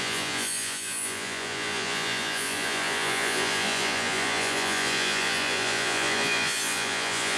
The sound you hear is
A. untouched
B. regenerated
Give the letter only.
B